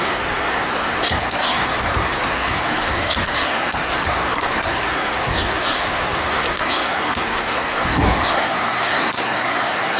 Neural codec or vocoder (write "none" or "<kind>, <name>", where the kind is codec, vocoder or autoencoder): codec, SNAC